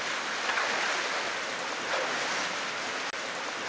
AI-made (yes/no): no